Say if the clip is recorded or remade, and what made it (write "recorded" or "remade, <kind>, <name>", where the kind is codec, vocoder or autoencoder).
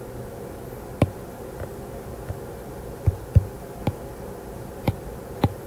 recorded